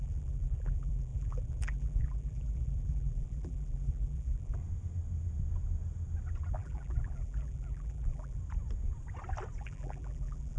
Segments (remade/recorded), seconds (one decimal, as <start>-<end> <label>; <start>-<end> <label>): 0.0-4.6 remade; 4.6-6.5 recorded; 6.5-8.4 remade; 8.4-9.6 recorded; 9.6-10.6 remade

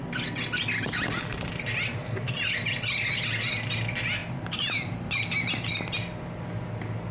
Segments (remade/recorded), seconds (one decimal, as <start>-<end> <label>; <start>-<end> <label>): 0.0-1.3 recorded; 1.3-2.1 remade; 2.1-4.2 recorded; 4.2-5.7 remade; 5.7-7.1 recorded

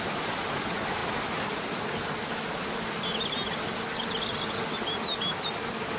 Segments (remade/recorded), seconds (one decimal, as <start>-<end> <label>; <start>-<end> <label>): 0.0-6.0 recorded

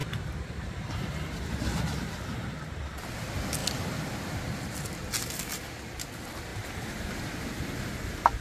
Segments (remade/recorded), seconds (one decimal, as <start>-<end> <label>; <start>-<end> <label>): 0.0-1.4 remade; 1.4-8.4 recorded

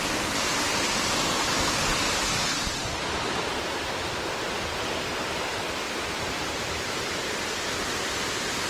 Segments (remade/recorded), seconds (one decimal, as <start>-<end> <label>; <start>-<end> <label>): 0.0-8.7 recorded

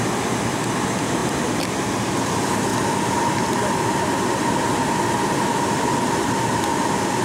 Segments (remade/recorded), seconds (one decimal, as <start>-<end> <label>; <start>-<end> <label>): 0.0-7.2 recorded

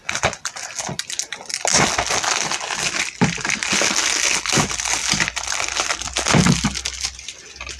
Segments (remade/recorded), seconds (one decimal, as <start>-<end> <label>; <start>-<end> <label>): 0.0-7.8 recorded